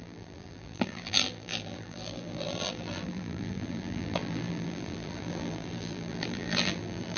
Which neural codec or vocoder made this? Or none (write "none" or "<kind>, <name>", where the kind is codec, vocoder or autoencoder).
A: vocoder, BigVGAN v2